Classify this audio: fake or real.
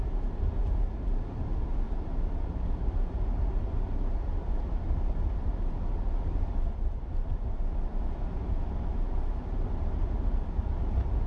real